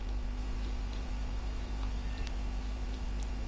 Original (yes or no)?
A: no